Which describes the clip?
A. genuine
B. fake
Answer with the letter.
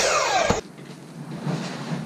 A